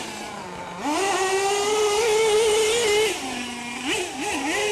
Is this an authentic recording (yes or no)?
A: yes